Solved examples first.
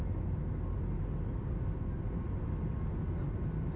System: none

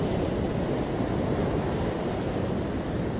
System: none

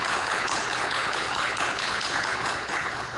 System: codec, HILCodec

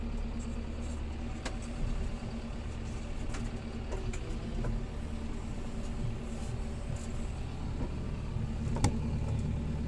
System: none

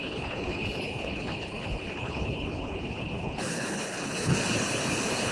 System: codec, HILCodec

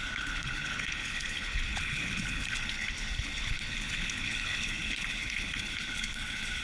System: codec, HILCodec